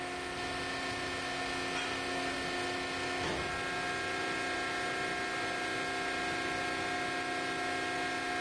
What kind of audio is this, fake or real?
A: real